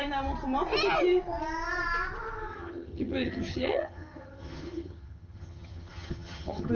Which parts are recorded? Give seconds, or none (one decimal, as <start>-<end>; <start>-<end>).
0.0-2.5